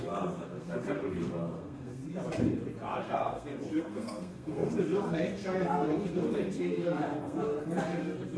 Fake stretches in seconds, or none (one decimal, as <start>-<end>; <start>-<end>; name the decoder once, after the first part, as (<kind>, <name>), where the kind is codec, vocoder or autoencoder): 0.0-2.0 (codec, SNAC); 3.0-8.4

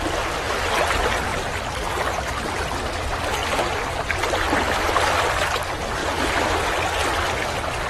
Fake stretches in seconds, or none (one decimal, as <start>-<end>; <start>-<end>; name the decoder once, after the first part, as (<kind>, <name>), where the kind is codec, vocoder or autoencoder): none

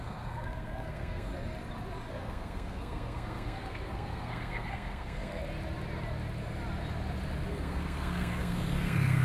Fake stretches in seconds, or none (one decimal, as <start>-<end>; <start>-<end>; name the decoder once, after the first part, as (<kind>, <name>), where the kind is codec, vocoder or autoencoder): 0.0-1.3 (codec, SNAC); 2.1-5.4; 7.5-9.2

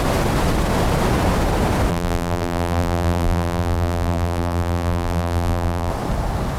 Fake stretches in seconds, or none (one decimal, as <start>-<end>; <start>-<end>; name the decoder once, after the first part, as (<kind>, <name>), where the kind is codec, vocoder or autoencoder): 1.9-5.9 (vocoder, BigVGAN v2)

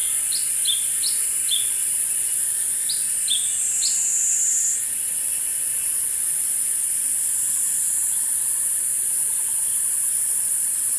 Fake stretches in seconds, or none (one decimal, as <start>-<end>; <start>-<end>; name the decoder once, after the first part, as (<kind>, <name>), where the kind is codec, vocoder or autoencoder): none